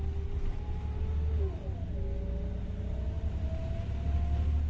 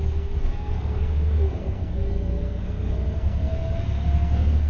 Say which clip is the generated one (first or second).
second